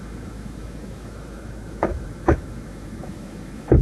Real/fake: fake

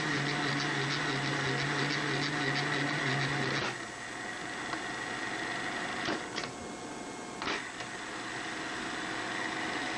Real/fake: real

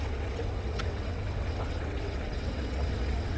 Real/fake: fake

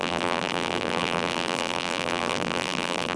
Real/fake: fake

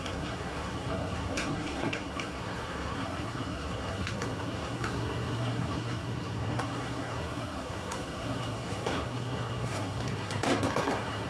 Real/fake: fake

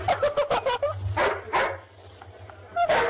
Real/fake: real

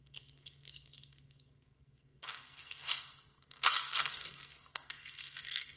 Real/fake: fake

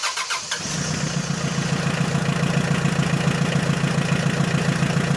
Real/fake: real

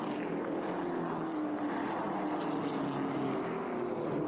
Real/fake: real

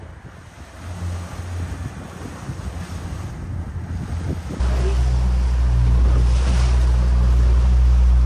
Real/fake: real